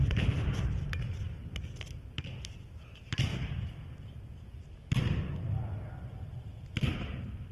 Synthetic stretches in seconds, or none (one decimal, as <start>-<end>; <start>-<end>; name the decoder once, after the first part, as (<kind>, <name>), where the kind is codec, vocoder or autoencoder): none

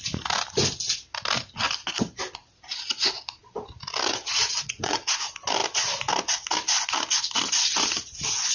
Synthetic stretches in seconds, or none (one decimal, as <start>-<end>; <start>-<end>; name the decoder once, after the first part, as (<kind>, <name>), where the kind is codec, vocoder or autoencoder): 4.1-5.0 (vocoder, WaveNeXt)

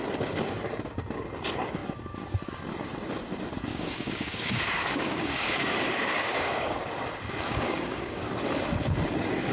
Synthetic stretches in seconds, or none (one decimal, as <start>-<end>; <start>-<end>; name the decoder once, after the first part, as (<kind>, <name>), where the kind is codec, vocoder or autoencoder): 3.7-6.9 (codec, DAC); 7.5-8.3

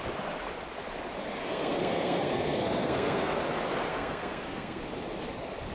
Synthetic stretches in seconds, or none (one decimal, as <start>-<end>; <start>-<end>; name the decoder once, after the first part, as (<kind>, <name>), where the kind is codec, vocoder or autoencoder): 1.4-3.4 (codec, SNAC); 3.9-4.8

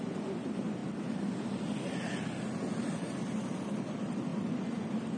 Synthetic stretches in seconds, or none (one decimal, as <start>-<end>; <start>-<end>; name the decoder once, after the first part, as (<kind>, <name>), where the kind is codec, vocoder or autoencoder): 0.0-0.8 (vocoder, BigVGAN v2); 3.9-5.2

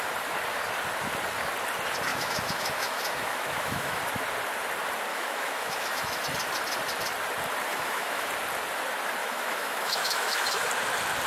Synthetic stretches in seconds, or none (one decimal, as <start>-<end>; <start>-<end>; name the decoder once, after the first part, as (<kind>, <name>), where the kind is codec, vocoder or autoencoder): 2.1-4.0 (autoencoder, DAC-VAE); 5.1-6.2; 7.7-8.3; 9.2-10.7

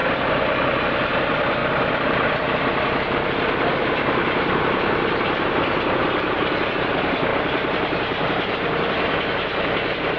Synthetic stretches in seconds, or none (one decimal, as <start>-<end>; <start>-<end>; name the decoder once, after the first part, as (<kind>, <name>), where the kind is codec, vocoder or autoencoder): 1.6-6.7 (vocoder, BigVGAN v2); 7.3-8.5